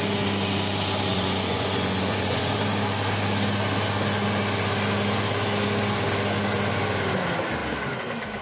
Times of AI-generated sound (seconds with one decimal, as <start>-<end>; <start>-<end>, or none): 1.1-2.5